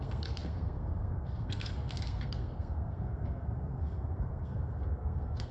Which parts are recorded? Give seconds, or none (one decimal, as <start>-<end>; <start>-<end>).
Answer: none